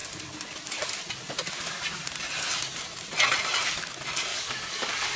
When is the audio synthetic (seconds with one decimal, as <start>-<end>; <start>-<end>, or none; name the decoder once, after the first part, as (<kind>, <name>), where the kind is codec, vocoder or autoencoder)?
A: 4.3-5.2 (codec, DAC)